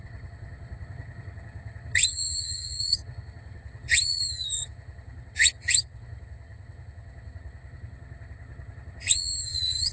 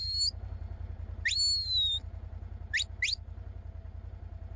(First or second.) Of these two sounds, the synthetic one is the first